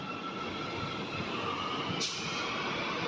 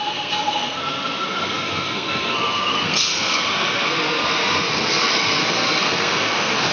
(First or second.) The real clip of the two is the first